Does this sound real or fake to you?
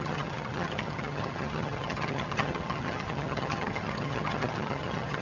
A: fake